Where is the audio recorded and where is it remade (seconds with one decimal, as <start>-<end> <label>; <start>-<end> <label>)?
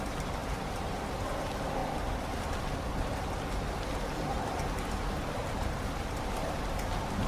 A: 0.0-0.4 recorded; 0.4-1.2 remade; 1.2-1.8 recorded; 1.8-2.3 remade; 2.3-5.4 recorded; 5.4-6.7 remade; 6.7-7.3 recorded